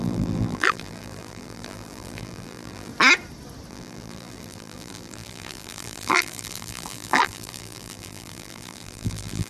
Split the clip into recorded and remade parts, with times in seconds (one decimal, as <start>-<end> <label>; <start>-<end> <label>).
0.0-2.9 remade; 2.9-3.7 recorded; 3.7-9.5 remade

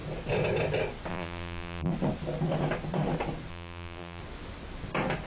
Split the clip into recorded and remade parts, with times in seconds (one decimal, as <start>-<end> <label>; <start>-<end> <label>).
0.0-1.1 recorded; 1.1-1.9 remade; 1.9-3.5 recorded; 3.5-4.2 remade; 4.2-5.3 recorded

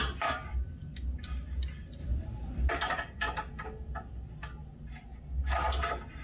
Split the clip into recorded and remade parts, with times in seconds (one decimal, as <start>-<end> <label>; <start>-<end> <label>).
0.0-0.8 remade; 0.8-2.0 recorded; 2.0-2.7 remade; 2.7-6.2 recorded

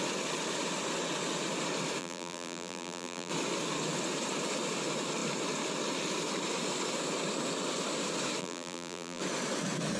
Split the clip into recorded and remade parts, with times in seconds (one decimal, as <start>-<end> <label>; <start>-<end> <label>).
0.0-2.0 recorded; 2.0-3.3 remade; 3.3-8.4 recorded; 8.4-9.2 remade; 9.2-10.0 recorded

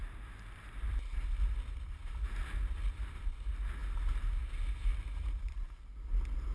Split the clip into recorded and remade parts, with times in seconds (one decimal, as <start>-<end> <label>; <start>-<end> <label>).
0.0-1.0 remade; 1.0-2.4 recorded; 2.4-3.3 remade; 3.3-6.5 recorded

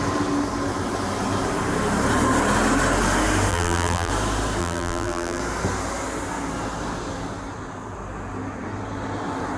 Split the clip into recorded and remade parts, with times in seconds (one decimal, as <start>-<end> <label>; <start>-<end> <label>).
0.0-3.5 recorded; 3.5-4.1 remade; 4.1-4.6 recorded; 4.6-5.4 remade; 5.4-9.6 recorded